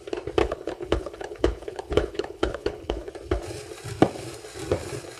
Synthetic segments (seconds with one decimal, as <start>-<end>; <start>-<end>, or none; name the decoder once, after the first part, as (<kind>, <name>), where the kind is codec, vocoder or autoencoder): 0.4-3.1 (codec, HILCodec)